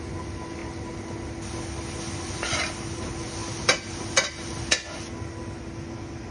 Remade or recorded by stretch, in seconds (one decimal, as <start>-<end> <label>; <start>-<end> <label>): 0.0-6.3 recorded